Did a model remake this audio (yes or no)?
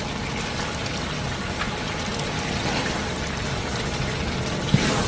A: no